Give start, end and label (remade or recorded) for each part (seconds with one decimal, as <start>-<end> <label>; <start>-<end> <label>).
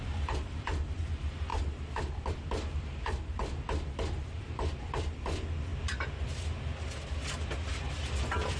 0.0-1.5 remade; 1.5-2.3 recorded; 2.3-5.7 remade; 5.7-8.1 recorded; 8.1-8.6 remade